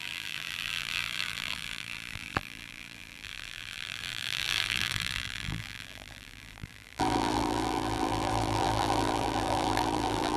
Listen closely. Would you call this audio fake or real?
fake